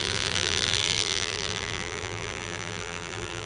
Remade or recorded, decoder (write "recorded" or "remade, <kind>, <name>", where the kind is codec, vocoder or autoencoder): remade, vocoder, BigVGAN v2